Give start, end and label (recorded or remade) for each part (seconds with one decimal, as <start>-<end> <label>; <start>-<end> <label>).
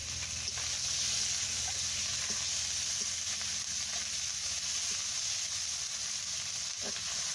0.0-7.3 recorded